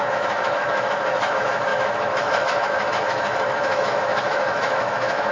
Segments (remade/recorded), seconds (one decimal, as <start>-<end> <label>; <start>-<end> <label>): 0.0-5.3 remade